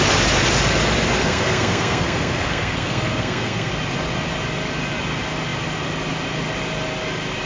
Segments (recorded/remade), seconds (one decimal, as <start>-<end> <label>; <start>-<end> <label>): 0.0-1.2 recorded; 1.2-3.7 remade; 3.7-7.5 recorded